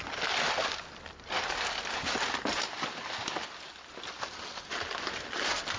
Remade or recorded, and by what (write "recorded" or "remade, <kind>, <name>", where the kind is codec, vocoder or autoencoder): recorded